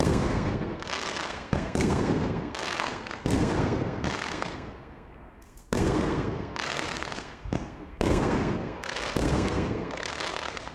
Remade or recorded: remade